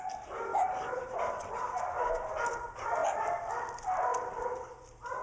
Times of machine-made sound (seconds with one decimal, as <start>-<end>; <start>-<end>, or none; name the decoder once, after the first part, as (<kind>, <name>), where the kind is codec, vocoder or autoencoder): 0.5-1.8 (vocoder, BigVGAN v2); 4.1-5.2